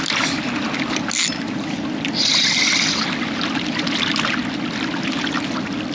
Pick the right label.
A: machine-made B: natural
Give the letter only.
B